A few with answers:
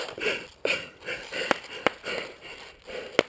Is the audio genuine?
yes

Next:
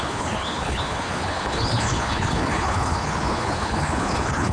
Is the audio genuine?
no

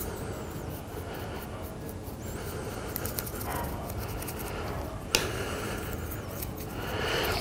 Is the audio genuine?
yes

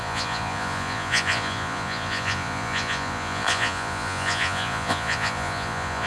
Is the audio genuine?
no